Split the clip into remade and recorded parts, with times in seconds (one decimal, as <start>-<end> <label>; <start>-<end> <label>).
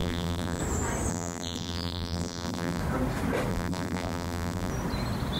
0.0-0.6 remade; 0.6-1.1 recorded; 1.1-2.8 remade; 2.8-3.5 recorded; 3.5-4.7 remade; 4.7-5.4 recorded